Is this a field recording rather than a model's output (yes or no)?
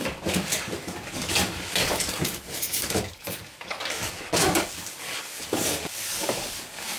no